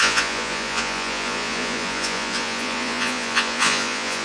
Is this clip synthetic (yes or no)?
yes